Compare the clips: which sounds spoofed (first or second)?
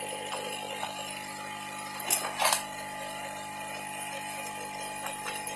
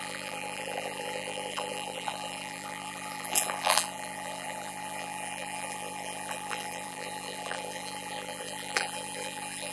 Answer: second